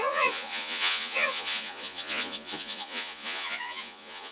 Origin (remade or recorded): remade